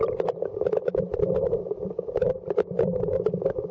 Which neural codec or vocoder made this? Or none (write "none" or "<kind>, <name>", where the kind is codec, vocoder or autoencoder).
vocoder, BigVGAN v2